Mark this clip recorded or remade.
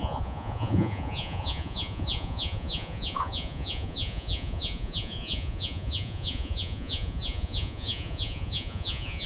remade